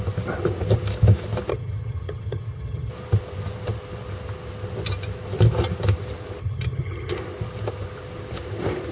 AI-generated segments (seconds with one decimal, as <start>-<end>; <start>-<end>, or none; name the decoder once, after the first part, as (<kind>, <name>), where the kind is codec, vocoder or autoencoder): 1.5-2.9 (vocoder, HiFi-GAN); 6.4-7.1